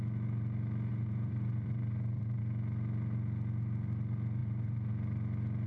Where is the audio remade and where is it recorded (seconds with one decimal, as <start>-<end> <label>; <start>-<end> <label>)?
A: 0.0-0.9 recorded; 0.9-2.4 remade; 2.4-4.4 recorded; 4.4-4.9 remade; 4.9-5.7 recorded

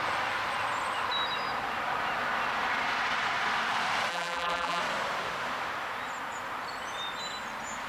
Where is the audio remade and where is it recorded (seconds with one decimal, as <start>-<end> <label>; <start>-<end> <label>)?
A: 0.0-4.1 recorded; 4.1-4.8 remade; 4.8-7.9 recorded